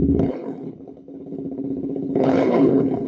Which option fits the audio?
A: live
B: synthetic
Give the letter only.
B